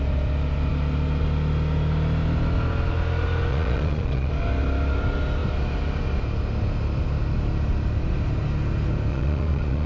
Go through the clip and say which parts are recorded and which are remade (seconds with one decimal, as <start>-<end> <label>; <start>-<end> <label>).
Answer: 0.0-3.5 recorded; 3.5-4.3 remade; 4.3-9.1 recorded; 9.1-9.9 remade